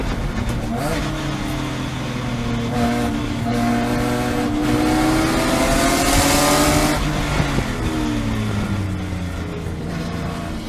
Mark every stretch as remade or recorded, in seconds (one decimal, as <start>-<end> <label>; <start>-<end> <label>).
0.0-2.9 recorded; 2.9-3.7 remade; 3.7-10.7 recorded